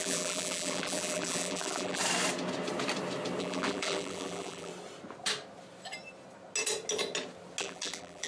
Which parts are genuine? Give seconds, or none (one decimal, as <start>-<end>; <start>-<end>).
2.0-3.4; 4.7-7.6